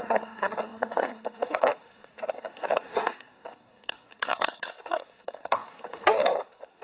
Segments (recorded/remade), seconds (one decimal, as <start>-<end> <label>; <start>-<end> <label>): 0.0-6.8 remade